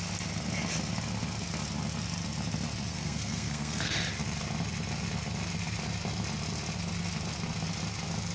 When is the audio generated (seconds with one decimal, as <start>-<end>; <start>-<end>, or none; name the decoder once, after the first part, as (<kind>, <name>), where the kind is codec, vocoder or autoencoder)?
2.9-3.9 (codec, SNAC)